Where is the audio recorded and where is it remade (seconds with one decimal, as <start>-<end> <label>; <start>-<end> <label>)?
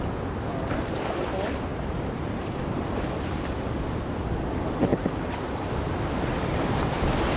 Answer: 0.0-1.7 recorded; 1.7-3.0 remade; 3.0-4.9 recorded; 4.9-6.0 remade; 6.0-7.4 recorded